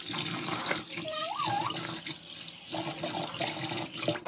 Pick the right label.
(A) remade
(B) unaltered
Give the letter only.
B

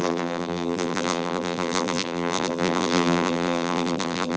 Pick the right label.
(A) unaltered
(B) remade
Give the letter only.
B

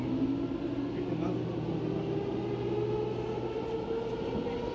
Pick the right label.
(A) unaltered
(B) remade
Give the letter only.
A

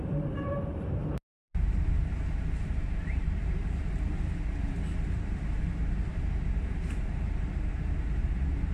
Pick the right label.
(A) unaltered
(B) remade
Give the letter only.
B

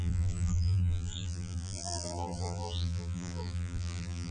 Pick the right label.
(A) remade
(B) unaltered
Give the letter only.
A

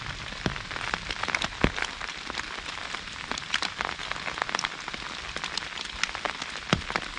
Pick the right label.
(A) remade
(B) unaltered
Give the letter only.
B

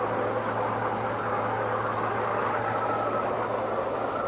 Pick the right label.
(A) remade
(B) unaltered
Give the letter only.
B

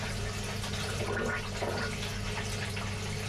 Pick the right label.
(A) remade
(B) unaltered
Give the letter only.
B